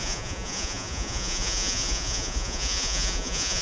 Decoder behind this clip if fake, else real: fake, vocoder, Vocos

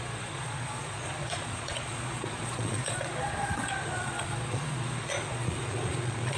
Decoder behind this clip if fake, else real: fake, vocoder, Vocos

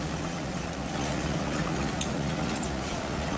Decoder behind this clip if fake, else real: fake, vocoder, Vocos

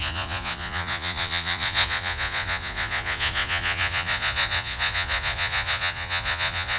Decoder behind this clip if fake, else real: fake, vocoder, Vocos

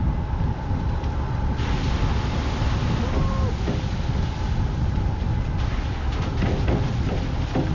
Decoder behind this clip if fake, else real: real